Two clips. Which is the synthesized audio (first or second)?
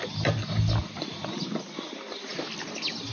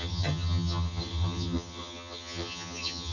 second